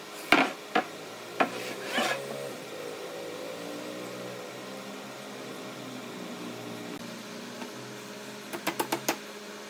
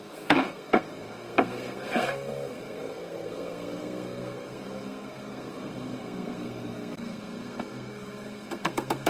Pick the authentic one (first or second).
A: first